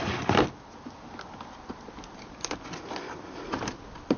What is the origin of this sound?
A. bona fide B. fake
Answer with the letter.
A